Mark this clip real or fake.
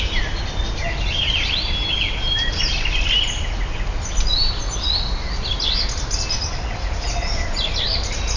real